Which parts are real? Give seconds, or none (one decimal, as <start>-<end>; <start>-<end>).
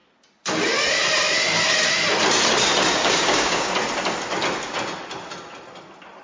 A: 0.0-3.0; 3.7-6.2